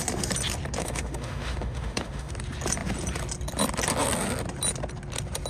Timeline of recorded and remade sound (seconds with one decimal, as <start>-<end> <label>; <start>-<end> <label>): 0.0-0.8 recorded; 0.8-2.3 remade; 2.3-5.5 recorded